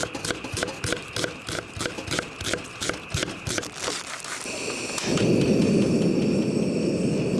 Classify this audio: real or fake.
real